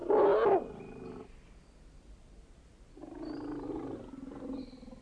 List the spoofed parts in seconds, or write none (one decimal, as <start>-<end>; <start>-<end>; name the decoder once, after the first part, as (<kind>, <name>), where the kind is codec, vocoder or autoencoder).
none